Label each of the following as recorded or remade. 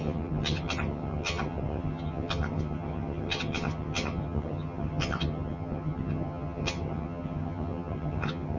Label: remade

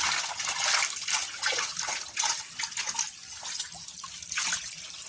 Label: recorded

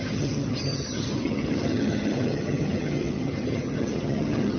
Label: remade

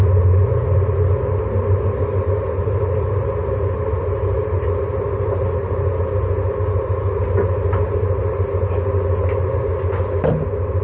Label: recorded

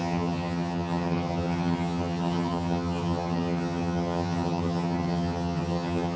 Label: remade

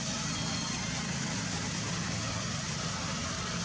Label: recorded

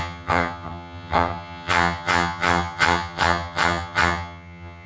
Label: remade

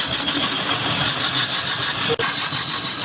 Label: recorded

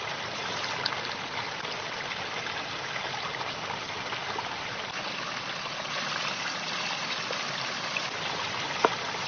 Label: recorded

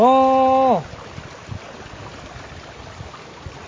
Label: recorded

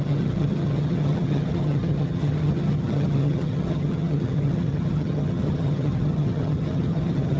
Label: remade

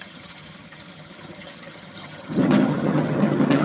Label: remade